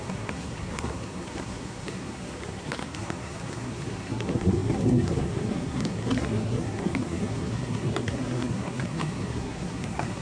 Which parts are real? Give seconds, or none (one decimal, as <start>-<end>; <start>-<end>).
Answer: none